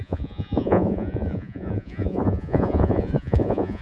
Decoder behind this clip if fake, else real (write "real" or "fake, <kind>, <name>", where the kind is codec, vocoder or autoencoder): fake, vocoder, Vocos